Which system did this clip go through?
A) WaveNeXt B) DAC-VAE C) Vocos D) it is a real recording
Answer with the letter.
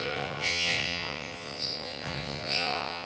A